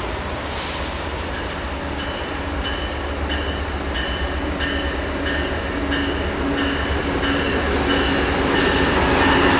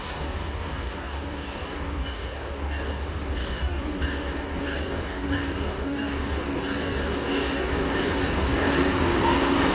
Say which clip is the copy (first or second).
second